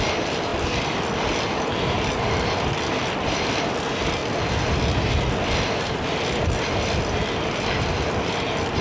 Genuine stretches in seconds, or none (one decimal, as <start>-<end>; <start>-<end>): 0.0-8.8